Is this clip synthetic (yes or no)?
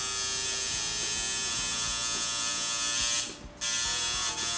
no